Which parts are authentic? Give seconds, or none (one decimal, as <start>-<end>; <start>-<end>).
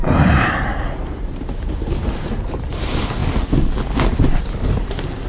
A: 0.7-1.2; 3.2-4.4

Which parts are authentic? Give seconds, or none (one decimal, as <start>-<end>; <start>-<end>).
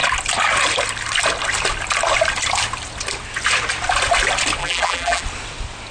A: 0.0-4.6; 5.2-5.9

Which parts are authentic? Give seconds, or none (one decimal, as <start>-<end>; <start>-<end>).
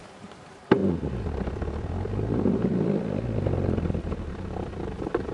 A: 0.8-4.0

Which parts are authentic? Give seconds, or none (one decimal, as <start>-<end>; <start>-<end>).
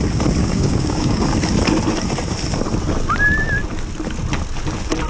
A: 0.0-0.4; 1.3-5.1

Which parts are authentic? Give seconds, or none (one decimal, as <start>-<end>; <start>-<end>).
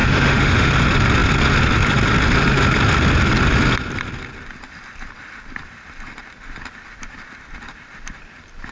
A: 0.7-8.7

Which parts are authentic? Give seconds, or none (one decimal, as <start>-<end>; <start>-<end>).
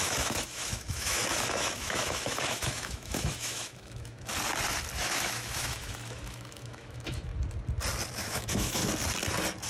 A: 4.3-5.0; 7.3-8.2; 8.8-9.7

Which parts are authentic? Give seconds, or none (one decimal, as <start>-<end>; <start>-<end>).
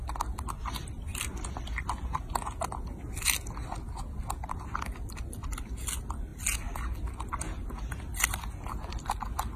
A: 0.0-9.6